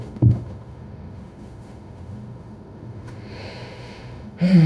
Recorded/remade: remade